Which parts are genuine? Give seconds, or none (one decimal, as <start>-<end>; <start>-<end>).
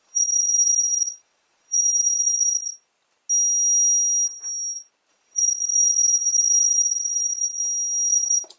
2.7-5.1; 7.6-8.1